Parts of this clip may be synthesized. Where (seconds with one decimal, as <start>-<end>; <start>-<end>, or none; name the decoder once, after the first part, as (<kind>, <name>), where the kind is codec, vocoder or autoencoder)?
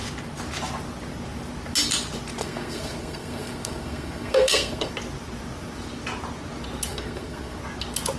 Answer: 2.4-4.9 (codec, SNAC); 6.9-7.6